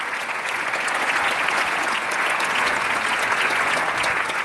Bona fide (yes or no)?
no